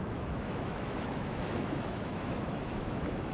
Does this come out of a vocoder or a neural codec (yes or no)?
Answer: yes